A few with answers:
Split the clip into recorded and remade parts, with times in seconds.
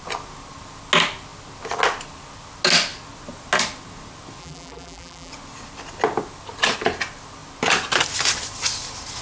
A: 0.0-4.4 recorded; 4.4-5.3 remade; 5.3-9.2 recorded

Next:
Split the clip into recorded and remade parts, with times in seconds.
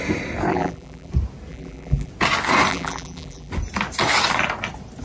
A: 0.0-0.5 recorded; 0.5-1.1 remade; 1.1-1.5 recorded; 1.5-2.1 remade; 2.1-2.7 recorded; 2.7-3.5 remade; 3.5-5.0 recorded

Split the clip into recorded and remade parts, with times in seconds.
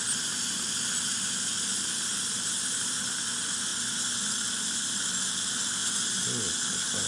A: 0.0-2.1 recorded; 2.1-3.0 remade; 3.0-7.1 recorded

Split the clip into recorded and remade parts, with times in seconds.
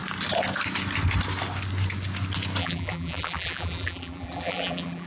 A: 0.0-2.6 recorded; 2.6-5.1 remade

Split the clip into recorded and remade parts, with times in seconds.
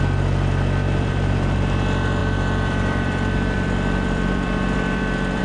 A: 0.0-0.8 recorded; 0.8-1.6 remade; 1.6-2.2 recorded; 2.2-5.4 remade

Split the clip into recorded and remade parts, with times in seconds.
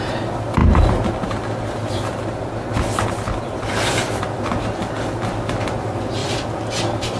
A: 0.0-6.2 recorded; 6.2-6.7 remade; 6.7-7.2 recorded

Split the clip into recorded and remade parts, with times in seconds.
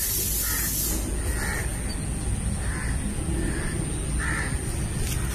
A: 0.0-5.3 recorded